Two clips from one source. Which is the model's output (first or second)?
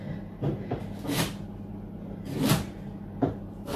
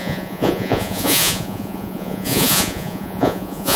second